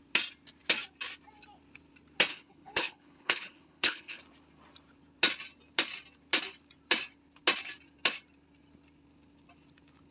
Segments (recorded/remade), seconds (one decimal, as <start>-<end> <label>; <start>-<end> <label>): 0.0-2.3 recorded; 2.3-4.2 remade; 4.2-10.1 recorded